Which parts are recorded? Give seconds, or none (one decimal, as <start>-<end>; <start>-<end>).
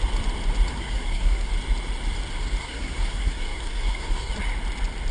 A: 0.0-0.7; 1.5-2.6; 4.3-5.1